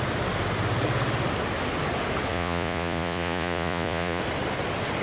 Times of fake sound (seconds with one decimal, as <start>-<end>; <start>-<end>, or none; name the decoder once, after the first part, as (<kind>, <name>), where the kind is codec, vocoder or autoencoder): 2.3-4.2 (vocoder, Vocos)